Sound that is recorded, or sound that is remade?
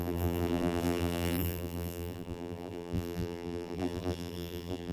remade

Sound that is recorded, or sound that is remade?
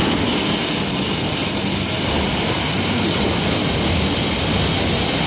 recorded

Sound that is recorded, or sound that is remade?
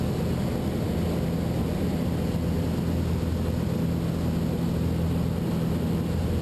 recorded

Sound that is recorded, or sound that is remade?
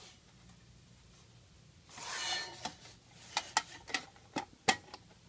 recorded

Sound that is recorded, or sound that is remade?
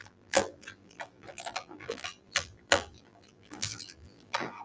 remade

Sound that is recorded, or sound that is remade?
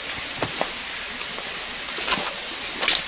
recorded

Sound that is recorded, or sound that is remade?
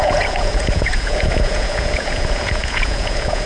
remade